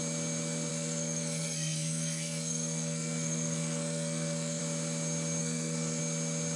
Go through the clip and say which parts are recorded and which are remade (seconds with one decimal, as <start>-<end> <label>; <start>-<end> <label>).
0.0-0.7 recorded; 0.7-4.6 remade; 4.6-5.4 recorded; 5.4-6.0 remade; 6.0-6.6 recorded